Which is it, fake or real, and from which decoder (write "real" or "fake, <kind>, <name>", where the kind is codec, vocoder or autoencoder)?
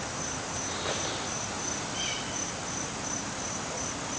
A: real